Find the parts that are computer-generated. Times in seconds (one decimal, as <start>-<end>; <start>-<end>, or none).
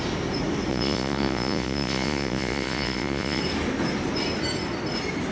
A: 0.7-3.4